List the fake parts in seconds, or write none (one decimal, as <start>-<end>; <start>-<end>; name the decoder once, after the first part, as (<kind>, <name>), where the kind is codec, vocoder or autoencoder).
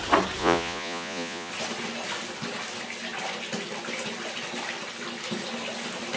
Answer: 0.4-1.5 (vocoder, Vocos)